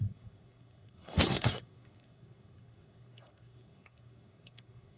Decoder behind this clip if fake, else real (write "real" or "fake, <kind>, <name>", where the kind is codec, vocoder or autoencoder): fake, codec, SNAC